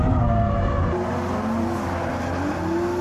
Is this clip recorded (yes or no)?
yes